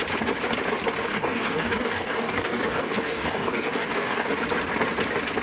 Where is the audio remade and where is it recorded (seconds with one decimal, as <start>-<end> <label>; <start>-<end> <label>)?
0.0-1.1 recorded; 1.1-4.3 remade; 4.3-5.4 recorded